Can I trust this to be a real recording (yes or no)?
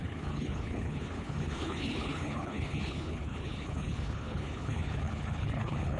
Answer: no